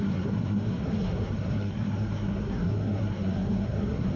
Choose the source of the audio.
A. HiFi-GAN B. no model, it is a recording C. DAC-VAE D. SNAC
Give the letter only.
D